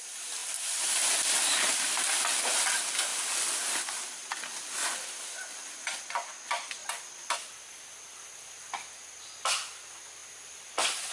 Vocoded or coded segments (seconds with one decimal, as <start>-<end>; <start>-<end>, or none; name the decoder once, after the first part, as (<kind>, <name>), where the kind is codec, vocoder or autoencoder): 0.4-2.4 (vocoder, BigVGAN v2); 6.8-8.5; 10.2-10.7